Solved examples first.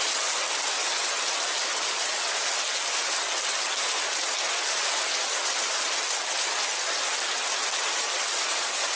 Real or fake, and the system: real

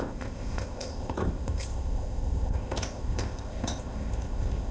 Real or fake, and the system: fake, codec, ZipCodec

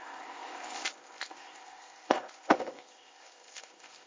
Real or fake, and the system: fake, codec, ZipCodec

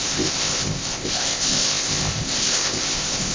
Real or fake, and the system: fake, codec, ZipCodec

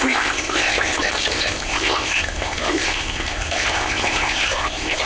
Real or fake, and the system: fake, codec, ZipCodec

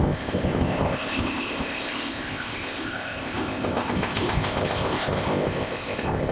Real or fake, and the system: fake, codec, ZipCodec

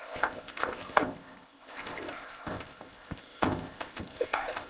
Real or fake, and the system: fake, codec, ZipCodec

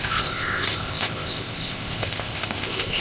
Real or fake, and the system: fake, codec, ZipCodec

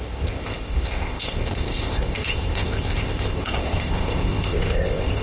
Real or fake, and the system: fake, codec, ZipCodec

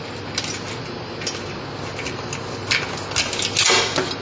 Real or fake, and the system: real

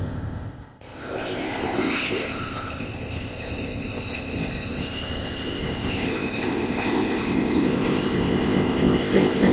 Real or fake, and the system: fake, codec, ZipCodec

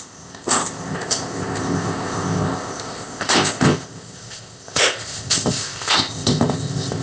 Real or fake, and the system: fake, codec, ZipCodec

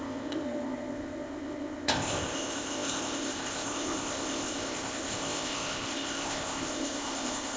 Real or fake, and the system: fake, codec, ZipCodec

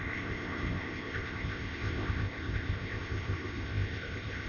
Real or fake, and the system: fake, codec, ZipCodec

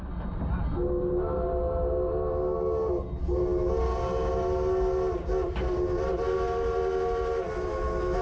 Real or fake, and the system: real